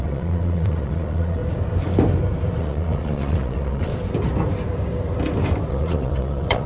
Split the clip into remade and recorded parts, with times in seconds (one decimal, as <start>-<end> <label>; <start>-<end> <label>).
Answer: 0.0-1.4 remade; 1.4-2.6 recorded; 2.6-3.9 remade; 3.9-5.7 recorded; 5.7-6.7 remade